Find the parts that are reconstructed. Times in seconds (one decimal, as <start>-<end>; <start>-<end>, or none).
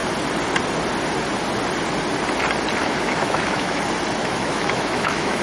2.8-3.8; 4.2-5.4